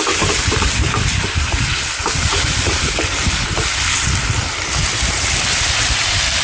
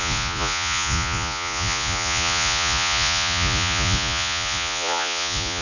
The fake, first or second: second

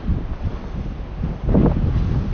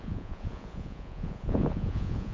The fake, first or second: second